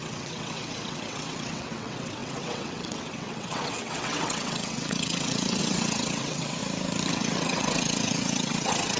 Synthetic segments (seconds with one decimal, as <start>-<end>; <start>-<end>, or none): 0.0-6.6; 7.1-9.0